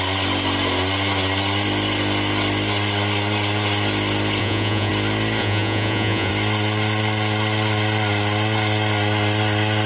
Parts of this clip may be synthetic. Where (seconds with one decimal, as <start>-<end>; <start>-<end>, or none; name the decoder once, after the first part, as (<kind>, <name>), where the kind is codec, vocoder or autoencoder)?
4.4-4.9 (vocoder, Vocos); 5.4-6.3